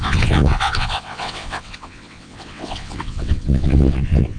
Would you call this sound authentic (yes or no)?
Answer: no